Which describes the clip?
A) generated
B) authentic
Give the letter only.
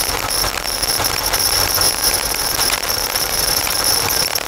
B